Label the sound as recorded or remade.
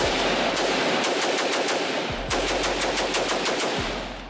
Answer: recorded